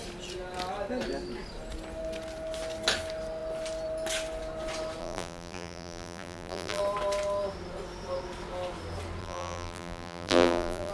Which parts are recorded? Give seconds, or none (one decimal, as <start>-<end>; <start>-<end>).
0.0-5.0; 6.8-9.2